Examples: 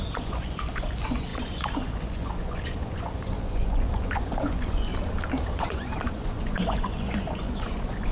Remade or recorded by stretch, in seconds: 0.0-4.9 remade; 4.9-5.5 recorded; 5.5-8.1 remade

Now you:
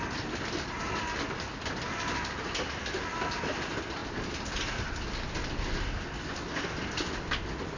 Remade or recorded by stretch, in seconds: 0.0-7.8 recorded

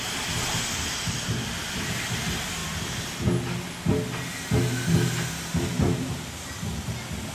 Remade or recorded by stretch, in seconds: 0.0-7.3 recorded